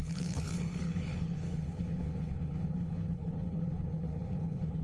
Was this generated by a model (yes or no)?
yes